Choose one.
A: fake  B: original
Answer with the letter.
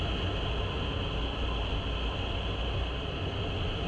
B